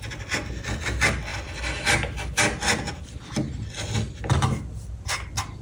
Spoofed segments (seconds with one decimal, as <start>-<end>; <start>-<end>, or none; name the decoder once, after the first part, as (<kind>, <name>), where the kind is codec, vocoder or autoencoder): none